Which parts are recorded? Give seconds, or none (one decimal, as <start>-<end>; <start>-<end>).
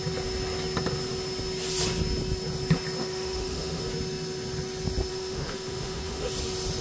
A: 0.0-3.0; 3.8-5.1; 6.3-6.8